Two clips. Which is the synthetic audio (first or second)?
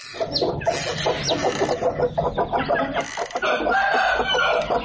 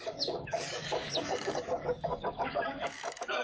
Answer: second